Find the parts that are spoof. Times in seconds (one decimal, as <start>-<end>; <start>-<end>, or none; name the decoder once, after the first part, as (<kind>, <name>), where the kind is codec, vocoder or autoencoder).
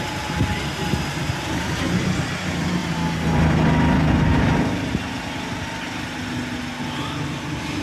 0.0-0.5 (vocoder, BigVGAN v2); 1.2-2.8